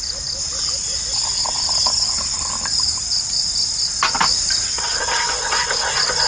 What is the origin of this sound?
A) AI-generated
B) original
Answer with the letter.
B